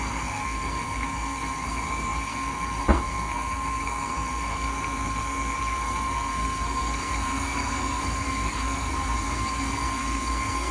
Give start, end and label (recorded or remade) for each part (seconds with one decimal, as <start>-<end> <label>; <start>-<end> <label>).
0.0-10.7 remade